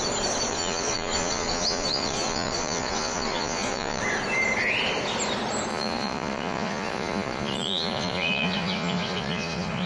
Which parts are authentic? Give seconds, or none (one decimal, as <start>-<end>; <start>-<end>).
0.0-0.5; 4.0-5.7